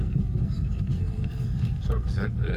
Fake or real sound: fake